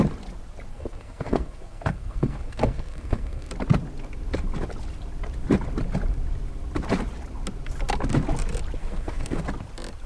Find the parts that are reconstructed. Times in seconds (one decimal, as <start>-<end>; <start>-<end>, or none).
0.7-3.5; 8.8-9.4